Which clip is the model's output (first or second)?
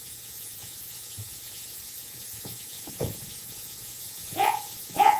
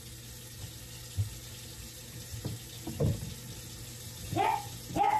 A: first